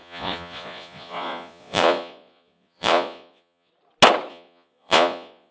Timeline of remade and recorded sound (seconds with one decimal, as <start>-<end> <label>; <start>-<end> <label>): 0.0-3.7 remade; 3.7-4.3 recorded; 4.3-5.5 remade